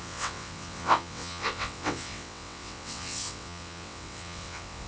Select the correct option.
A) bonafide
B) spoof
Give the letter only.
B